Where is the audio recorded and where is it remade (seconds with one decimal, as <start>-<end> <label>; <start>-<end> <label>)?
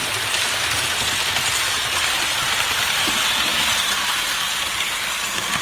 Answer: 0.0-5.6 recorded